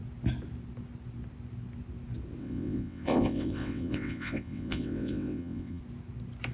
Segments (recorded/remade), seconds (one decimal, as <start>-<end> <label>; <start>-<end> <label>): 0.0-2.4 recorded; 2.4-5.8 remade; 5.8-6.5 recorded